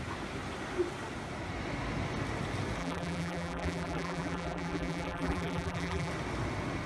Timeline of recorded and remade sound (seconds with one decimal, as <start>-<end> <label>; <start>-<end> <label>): 0.0-2.8 recorded; 2.8-6.1 remade; 6.1-6.9 recorded